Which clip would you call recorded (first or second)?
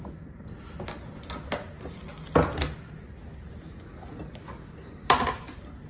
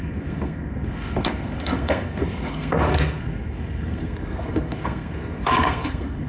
first